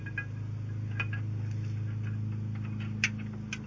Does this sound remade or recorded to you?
recorded